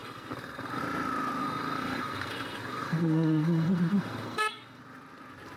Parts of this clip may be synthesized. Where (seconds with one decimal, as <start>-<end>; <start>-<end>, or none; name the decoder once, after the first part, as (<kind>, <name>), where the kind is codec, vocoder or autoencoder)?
0.0-0.8 (codec, SNAC); 1.4-4.8